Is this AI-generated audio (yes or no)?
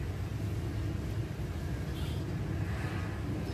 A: no